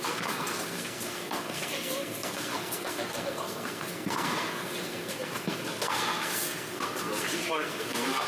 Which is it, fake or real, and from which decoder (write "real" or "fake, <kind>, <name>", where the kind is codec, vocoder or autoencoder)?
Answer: fake, codec, SNAC